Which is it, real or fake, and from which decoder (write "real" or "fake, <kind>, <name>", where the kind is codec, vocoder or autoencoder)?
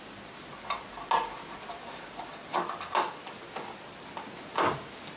real